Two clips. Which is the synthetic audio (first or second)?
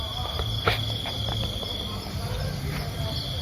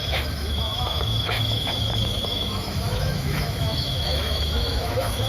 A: second